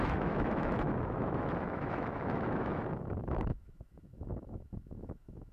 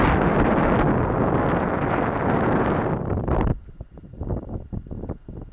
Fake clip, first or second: first